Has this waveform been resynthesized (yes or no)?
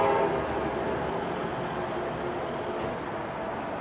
no